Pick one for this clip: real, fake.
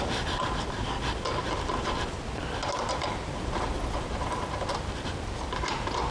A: real